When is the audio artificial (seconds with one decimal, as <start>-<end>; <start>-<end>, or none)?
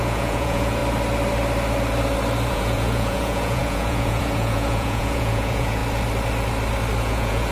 0.0-0.8; 2.5-5.8; 7.0-7.5